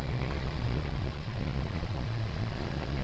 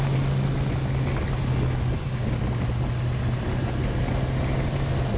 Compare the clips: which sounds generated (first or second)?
first